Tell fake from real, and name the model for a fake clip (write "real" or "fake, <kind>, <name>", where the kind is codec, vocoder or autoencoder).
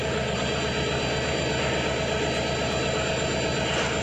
real